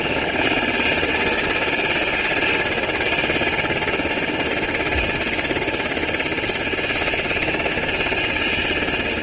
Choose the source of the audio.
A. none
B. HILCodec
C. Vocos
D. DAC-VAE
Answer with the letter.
A